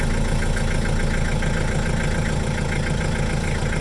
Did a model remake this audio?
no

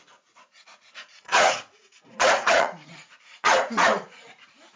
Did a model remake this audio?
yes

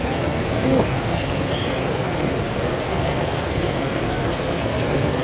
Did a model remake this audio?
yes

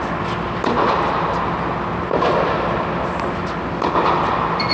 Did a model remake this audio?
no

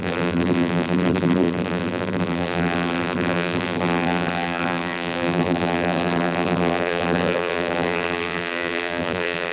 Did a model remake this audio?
yes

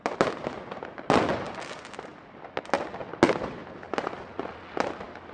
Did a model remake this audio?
no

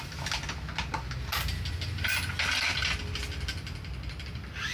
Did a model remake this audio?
no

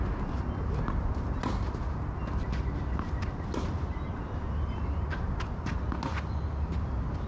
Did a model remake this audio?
no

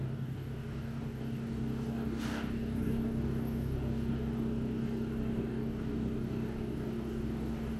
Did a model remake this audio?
yes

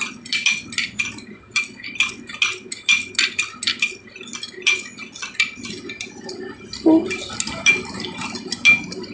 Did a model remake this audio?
no